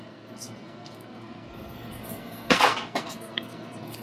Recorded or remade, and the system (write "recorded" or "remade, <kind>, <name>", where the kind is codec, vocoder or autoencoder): remade, codec, SNAC